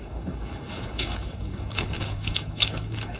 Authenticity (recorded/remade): remade